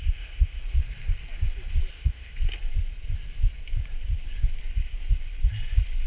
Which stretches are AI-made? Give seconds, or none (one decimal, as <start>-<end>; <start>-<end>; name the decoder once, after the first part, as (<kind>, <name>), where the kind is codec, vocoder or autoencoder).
0.0-0.6 (codec, ZipCodec); 1.9-2.3